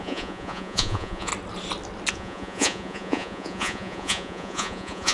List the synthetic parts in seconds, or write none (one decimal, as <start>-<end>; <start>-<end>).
0.0-1.3; 2.1-5.1